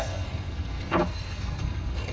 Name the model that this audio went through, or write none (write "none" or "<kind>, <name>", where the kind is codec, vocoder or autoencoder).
codec, SNAC